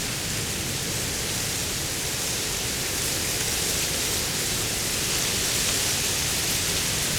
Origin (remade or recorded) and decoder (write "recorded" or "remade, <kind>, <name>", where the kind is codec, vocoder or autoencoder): recorded